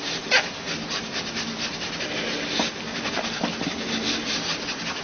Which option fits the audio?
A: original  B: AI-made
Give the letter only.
A